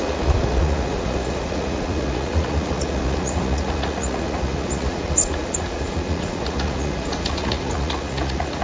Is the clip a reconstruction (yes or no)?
yes